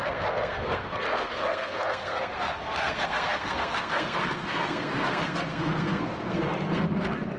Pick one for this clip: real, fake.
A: fake